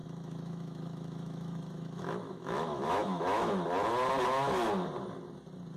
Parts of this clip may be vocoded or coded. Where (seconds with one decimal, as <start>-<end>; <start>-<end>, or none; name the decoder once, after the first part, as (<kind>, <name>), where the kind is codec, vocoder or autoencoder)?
0.0-3.5 (autoencoder, DAC-VAE)